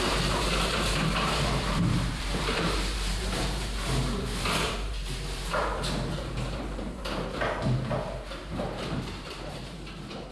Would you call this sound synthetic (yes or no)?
yes